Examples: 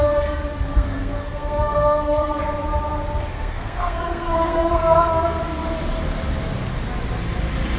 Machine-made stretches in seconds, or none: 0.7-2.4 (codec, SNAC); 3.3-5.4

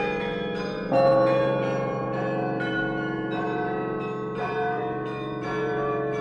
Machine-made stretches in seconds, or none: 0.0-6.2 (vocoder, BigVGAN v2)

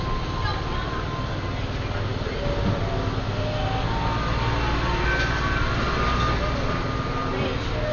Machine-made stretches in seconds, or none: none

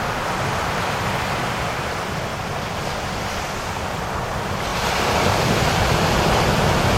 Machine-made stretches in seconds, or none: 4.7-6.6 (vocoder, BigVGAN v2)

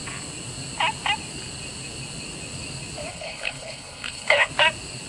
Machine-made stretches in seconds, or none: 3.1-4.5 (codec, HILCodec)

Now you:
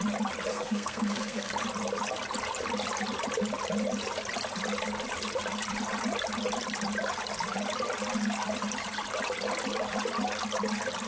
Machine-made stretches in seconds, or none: 0.5-1.5 (codec, SNAC)

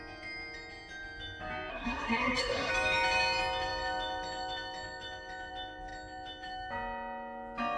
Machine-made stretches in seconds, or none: 1.7-2.7 (codec, SNAC)